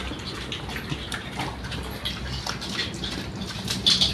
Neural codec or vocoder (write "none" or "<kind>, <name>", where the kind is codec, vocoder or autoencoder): none